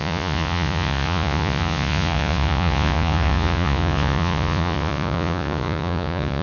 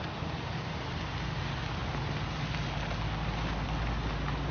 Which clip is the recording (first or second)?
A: second